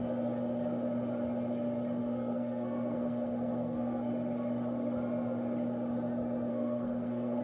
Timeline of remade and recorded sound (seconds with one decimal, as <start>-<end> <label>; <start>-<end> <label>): 0.0-2.0 recorded; 2.0-4.1 remade; 4.1-6.5 recorded; 6.5-7.4 remade